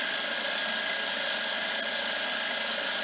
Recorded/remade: recorded